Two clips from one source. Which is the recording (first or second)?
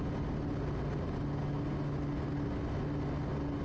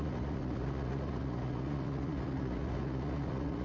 first